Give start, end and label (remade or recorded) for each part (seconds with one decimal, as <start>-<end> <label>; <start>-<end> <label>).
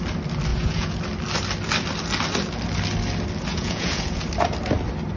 0.0-0.5 recorded; 0.5-1.0 remade; 1.0-3.5 recorded; 3.5-4.2 remade; 4.2-5.2 recorded